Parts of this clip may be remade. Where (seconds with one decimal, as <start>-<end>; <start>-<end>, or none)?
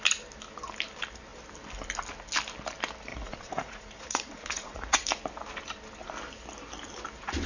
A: 3.1-5.0